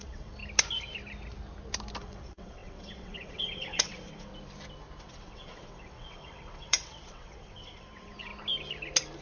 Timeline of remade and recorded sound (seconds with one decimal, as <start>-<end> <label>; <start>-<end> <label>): 0.0-0.4 remade; 0.4-2.0 recorded; 2.0-4.3 remade; 4.3-5.0 recorded; 5.0-8.3 remade; 8.3-9.2 recorded